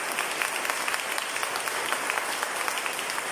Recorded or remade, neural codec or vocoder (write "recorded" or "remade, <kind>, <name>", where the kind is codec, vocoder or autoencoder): recorded